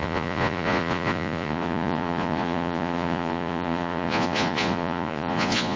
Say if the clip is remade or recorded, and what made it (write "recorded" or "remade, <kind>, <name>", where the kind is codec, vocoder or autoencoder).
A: remade, vocoder, Vocos